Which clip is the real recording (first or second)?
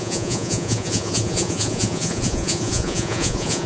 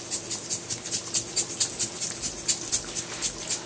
second